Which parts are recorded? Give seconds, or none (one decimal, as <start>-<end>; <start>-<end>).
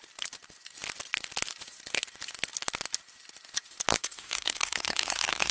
0.0-4.0